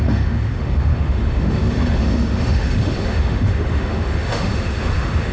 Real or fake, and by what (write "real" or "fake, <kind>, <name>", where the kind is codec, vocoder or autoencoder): fake, autoencoder, DAC-VAE